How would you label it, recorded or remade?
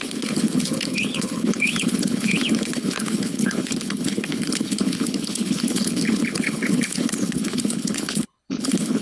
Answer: remade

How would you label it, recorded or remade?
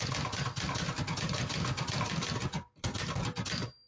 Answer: recorded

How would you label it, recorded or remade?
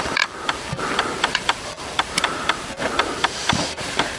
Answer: remade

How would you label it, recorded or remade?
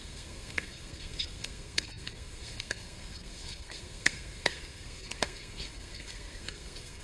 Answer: remade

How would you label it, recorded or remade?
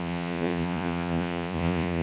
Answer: remade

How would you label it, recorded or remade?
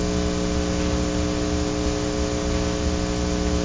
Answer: recorded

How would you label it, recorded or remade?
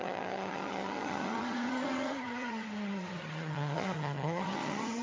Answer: remade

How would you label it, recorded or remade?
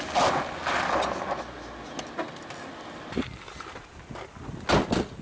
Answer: recorded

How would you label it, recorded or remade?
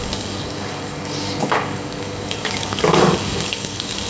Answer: remade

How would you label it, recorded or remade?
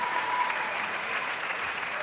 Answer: remade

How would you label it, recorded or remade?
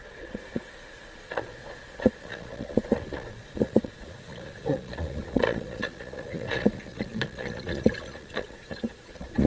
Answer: remade